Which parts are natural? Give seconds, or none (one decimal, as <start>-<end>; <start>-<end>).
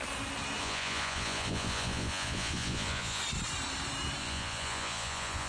0.0-0.6; 3.2-4.2